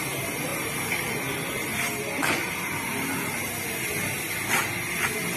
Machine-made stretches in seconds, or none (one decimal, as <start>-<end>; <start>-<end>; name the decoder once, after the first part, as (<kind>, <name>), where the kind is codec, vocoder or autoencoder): none